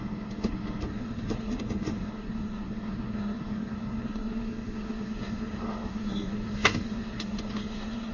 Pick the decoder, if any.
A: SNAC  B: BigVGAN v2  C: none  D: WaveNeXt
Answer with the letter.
A